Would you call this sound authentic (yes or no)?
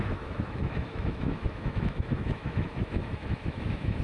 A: no